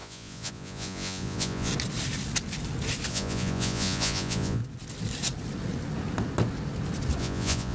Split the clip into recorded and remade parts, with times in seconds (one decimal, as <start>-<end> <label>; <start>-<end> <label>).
0.0-1.7 remade; 1.7-3.1 recorded; 3.1-4.6 remade; 4.6-7.2 recorded; 7.2-7.7 remade